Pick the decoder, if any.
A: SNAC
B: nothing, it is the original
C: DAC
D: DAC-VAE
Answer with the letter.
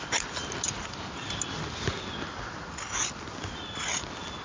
B